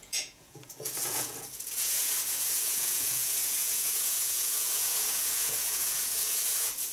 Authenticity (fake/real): fake